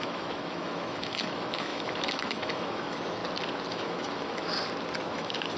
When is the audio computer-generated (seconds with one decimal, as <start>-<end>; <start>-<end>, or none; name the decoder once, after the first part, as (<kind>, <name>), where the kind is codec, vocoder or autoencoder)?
0.0-3.2 (autoencoder, DAC-VAE); 3.7-4.4; 5.1-5.6